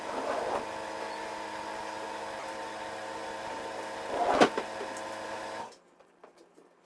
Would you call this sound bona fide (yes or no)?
yes